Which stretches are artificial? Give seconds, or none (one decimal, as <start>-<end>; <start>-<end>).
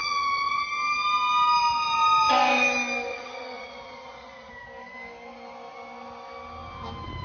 0.0-0.6; 3.1-4.5